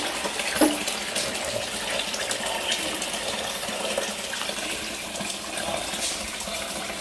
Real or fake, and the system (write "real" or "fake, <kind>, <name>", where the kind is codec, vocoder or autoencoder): real